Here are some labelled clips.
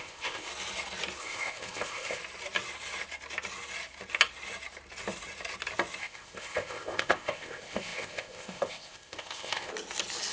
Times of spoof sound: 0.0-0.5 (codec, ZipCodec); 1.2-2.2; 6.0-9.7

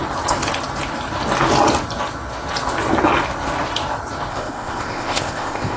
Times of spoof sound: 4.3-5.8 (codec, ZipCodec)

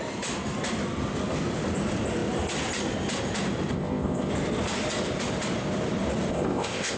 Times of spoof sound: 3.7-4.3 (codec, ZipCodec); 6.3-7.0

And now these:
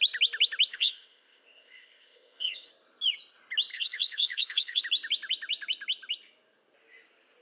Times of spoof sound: 0.7-2.7 (codec, ZipCodec); 3.7-4.8